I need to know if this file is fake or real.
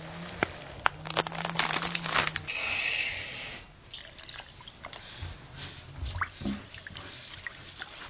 real